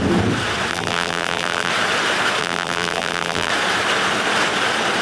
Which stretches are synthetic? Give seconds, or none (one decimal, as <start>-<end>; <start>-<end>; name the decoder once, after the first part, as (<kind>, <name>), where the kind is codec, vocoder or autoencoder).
0.7-1.7 (vocoder, BigVGAN v2); 2.4-3.5